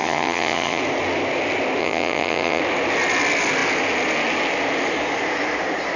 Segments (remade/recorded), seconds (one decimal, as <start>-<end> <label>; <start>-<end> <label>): 0.0-0.8 remade; 0.8-1.8 recorded; 1.8-2.6 remade; 2.6-6.0 recorded